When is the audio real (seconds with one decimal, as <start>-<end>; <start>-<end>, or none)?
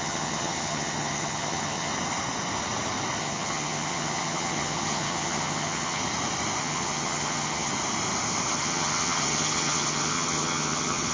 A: 1.9-3.2; 6.0-6.6; 7.7-8.5